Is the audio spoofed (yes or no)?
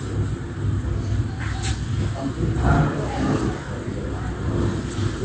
no